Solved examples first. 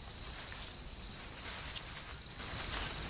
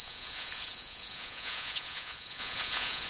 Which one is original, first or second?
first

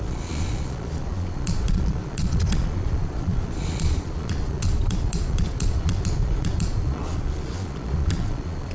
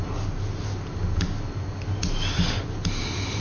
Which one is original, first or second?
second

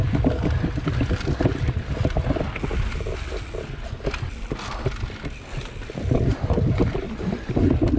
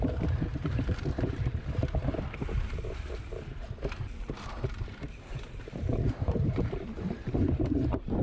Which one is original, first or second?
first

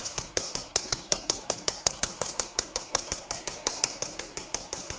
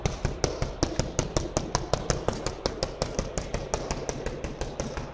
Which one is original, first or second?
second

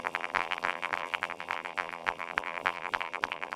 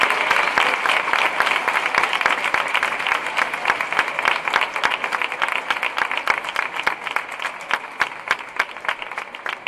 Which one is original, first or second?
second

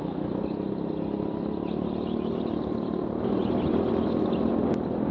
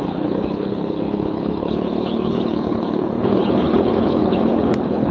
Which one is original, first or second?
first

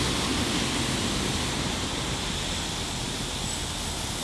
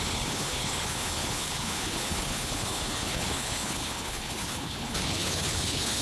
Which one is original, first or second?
first